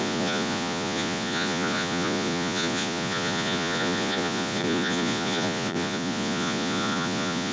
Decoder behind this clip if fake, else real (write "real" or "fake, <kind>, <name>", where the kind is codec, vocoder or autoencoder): fake, vocoder, Vocos